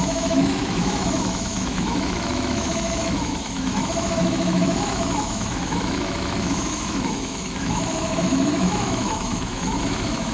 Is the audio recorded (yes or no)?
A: no